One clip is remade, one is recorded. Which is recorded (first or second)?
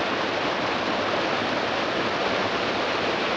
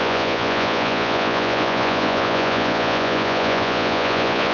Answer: first